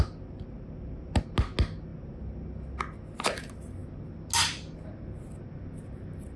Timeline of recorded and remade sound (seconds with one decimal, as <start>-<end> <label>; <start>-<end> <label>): 0.0-6.4 recorded